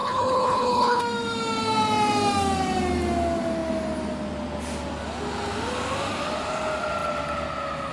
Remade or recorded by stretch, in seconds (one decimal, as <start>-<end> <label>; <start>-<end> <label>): 0.0-1.0 remade; 1.0-7.9 recorded